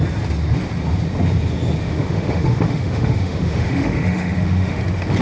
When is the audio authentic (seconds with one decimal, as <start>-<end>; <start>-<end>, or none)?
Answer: 0.0-1.8; 4.8-5.2